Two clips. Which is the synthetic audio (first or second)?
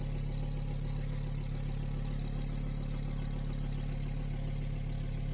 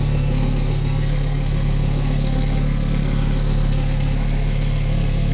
second